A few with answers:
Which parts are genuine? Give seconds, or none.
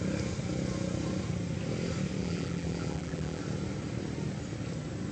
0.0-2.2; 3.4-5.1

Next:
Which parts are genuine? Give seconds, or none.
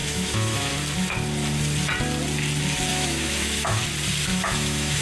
0.7-2.9; 3.8-4.3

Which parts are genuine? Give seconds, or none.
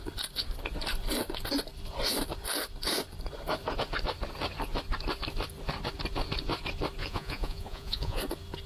0.0-7.0; 8.2-8.7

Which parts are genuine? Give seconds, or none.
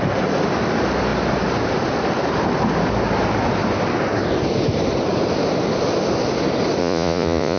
0.0-6.8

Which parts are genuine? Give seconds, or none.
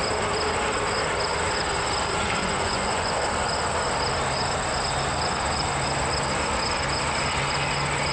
0.0-2.4; 3.2-8.1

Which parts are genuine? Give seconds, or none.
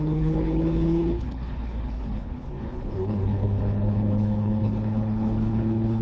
none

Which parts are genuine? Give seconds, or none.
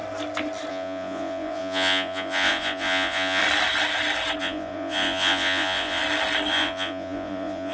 0.0-0.7; 3.4-4.4; 6.0-6.5